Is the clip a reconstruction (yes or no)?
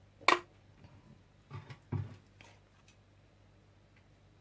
no